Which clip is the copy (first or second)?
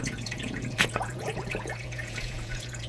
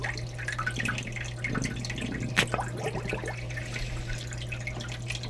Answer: first